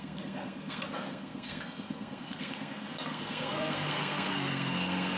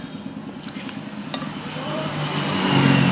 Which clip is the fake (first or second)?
first